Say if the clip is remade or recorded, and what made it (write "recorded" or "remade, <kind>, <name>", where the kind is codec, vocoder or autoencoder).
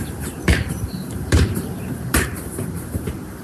remade, vocoder, BigVGAN v2